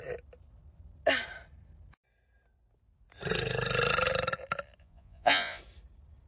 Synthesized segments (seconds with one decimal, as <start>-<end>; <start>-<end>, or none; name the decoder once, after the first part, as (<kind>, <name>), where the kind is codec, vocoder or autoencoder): 4.8-5.6 (vocoder, Vocos)